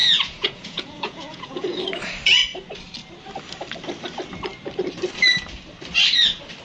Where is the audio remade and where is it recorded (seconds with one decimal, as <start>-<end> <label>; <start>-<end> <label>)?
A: 0.0-1.8 remade; 1.8-6.6 recorded